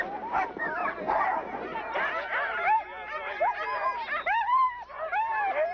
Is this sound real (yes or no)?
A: no